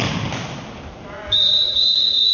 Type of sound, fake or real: real